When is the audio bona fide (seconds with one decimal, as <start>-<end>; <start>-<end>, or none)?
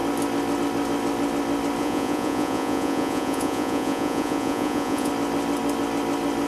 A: 0.0-1.8; 5.1-6.5